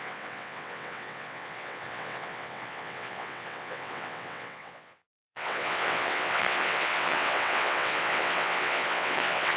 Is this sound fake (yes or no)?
yes